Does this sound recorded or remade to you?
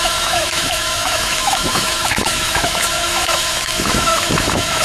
remade